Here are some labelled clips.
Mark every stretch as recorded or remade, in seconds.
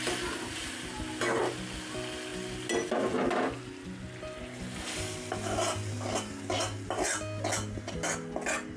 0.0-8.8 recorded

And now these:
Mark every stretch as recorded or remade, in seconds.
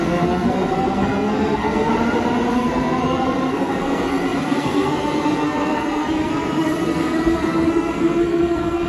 0.0-1.9 remade; 1.9-2.5 recorded; 2.5-8.9 remade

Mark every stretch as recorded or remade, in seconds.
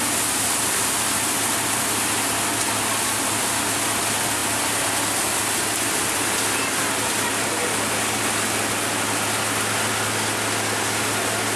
0.0-11.6 recorded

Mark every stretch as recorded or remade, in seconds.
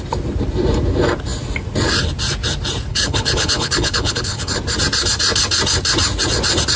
0.0-2.9 recorded; 2.9-4.5 remade; 4.5-6.8 recorded